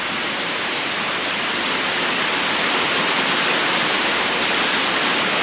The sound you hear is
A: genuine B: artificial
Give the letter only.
A